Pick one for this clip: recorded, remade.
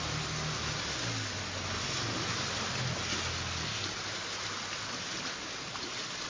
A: recorded